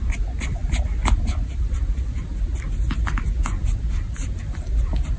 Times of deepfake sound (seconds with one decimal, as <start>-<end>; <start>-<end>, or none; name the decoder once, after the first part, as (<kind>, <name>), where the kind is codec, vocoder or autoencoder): none